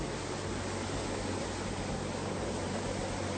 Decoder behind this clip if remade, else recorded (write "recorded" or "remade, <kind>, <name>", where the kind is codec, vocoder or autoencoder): recorded